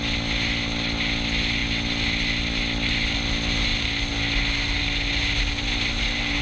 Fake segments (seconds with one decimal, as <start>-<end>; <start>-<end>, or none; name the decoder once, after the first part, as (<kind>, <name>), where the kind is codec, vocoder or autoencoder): none